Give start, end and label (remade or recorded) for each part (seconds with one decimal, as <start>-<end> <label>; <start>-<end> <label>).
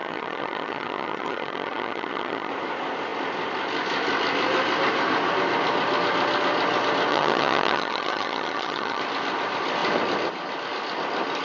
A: 0.0-2.5 remade; 2.5-7.1 recorded; 7.1-9.0 remade; 9.0-11.4 recorded